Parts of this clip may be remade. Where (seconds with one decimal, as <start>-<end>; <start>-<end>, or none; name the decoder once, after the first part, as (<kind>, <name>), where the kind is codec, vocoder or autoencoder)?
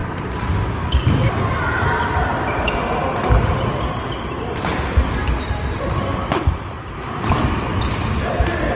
0.0-1.3 (vocoder, BigVGAN v2); 2.3-4.1